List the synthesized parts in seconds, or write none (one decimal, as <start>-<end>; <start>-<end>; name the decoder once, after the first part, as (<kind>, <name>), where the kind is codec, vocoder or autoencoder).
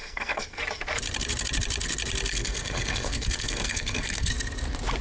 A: 0.0-0.6 (codec, SNAC); 2.3-4.3